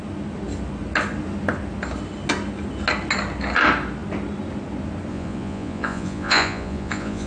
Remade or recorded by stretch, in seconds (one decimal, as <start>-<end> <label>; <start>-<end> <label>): 0.0-5.1 recorded; 5.1-7.3 remade